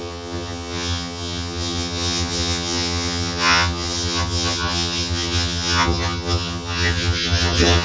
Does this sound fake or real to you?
fake